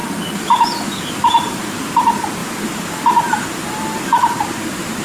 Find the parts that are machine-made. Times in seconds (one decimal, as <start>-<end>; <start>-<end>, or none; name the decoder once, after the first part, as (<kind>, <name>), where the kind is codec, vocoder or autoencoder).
0.0-1.5 (vocoder, BigVGAN v2)